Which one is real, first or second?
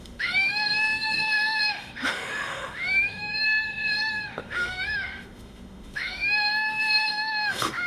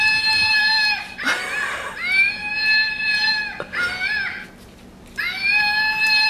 second